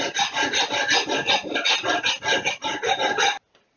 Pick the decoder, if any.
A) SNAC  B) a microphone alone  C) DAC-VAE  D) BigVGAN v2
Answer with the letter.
B